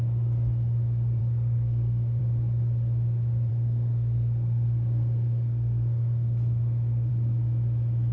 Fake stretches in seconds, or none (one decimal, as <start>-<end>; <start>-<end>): 1.2-2.2; 3.5-7.1